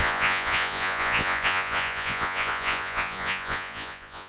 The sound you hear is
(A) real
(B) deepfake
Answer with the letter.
B